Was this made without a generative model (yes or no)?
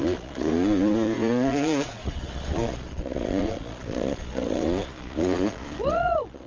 no